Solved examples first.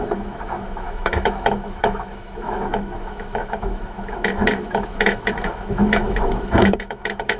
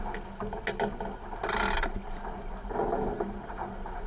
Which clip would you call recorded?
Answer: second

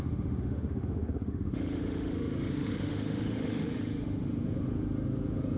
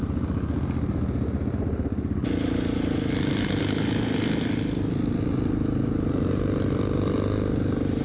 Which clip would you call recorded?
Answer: second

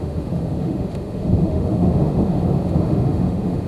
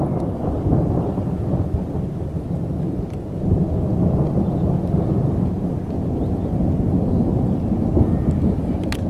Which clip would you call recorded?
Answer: second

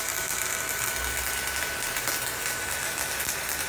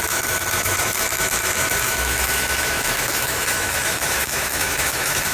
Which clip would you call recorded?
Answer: first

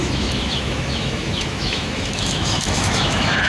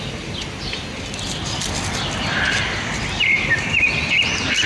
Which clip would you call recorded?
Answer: second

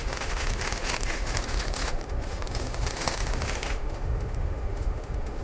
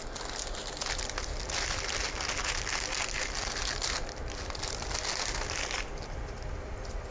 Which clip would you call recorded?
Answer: second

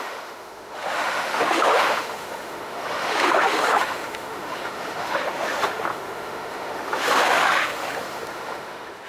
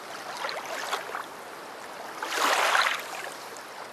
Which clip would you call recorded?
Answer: second